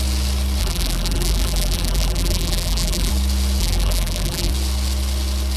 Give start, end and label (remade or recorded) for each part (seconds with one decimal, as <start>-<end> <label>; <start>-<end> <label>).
0.0-0.6 recorded; 0.6-3.1 remade; 3.1-3.6 recorded; 3.6-4.5 remade; 4.5-5.6 recorded